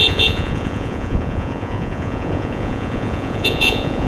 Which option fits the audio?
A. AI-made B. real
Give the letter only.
A